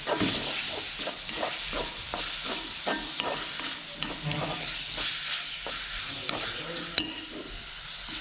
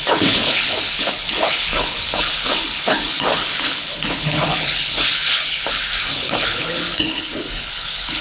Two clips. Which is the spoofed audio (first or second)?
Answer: second